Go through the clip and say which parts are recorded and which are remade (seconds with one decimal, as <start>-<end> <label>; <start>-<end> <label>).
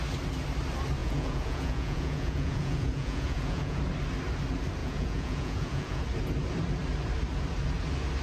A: 0.0-1.0 recorded; 1.0-3.8 remade; 3.8-4.8 recorded; 4.8-6.0 remade; 6.0-8.2 recorded